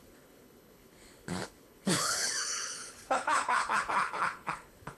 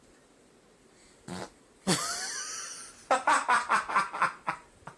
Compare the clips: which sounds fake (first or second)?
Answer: first